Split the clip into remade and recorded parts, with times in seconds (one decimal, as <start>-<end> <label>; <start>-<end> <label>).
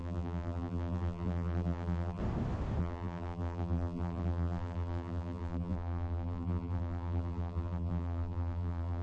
0.0-2.2 remade; 2.2-2.8 recorded; 2.8-9.0 remade